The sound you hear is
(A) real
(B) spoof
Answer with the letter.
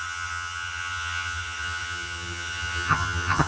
B